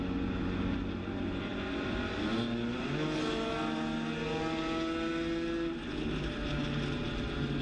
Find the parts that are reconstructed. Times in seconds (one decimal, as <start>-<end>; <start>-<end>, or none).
none